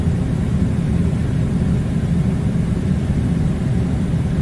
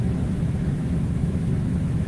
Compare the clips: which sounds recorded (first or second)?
first